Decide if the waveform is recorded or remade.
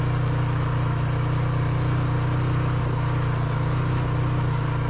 recorded